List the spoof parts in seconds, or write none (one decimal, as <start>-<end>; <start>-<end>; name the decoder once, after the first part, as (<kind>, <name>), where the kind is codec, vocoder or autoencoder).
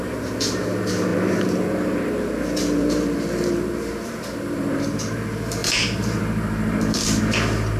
0.0-7.8 (vocoder, BigVGAN v2)